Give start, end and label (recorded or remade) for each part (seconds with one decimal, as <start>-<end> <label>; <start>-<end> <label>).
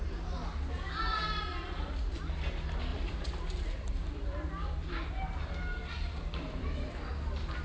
0.0-2.9 recorded; 2.9-5.1 remade; 5.1-5.7 recorded; 5.7-7.1 remade; 7.1-7.6 recorded